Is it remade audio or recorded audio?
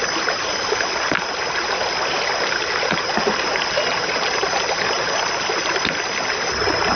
recorded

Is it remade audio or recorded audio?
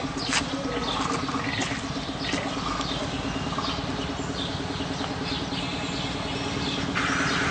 recorded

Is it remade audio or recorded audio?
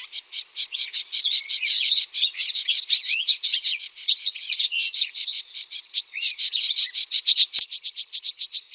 remade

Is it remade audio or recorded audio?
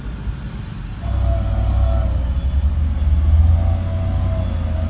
recorded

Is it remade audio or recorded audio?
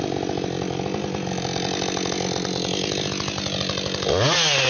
recorded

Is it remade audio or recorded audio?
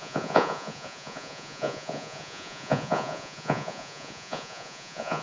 remade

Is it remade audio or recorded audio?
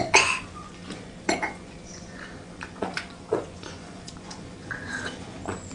remade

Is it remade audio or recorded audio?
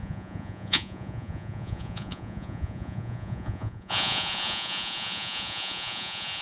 remade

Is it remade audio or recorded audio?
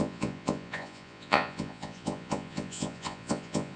remade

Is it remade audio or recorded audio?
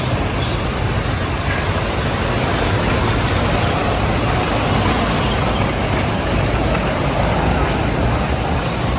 recorded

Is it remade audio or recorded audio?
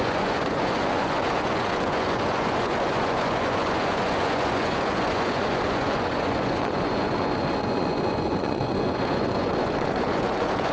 remade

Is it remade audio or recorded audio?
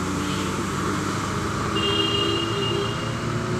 recorded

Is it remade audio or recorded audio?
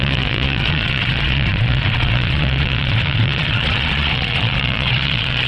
remade